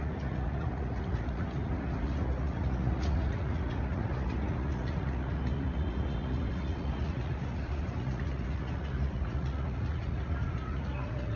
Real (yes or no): no